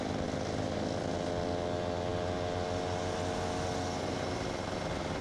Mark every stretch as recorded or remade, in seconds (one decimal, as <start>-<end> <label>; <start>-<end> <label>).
0.0-5.2 recorded